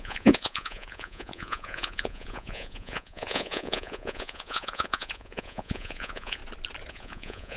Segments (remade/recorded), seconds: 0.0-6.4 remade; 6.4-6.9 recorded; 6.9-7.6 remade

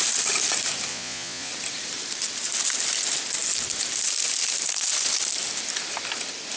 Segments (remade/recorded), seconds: 0.0-0.9 recorded; 0.9-1.5 remade; 1.5-6.6 recorded